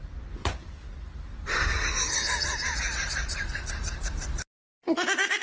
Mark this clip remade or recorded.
recorded